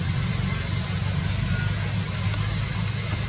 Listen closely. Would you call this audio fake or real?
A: real